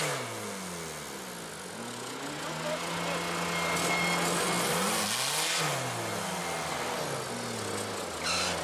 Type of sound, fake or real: real